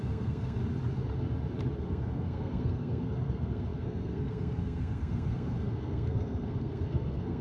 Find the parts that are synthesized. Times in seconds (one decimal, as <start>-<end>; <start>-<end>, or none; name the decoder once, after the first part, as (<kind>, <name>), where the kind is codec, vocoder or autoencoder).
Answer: 0.0-0.6 (codec, SNAC); 1.8-7.4